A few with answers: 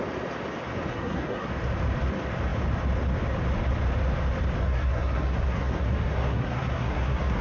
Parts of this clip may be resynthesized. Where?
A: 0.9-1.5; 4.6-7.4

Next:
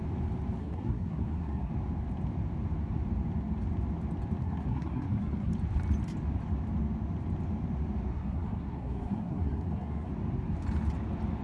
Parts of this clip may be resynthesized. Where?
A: 0.6-1.7; 4.4-5.5; 8.1-10.1